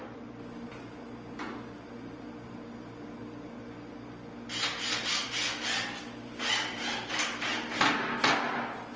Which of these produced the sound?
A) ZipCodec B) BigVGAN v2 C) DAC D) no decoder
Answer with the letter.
D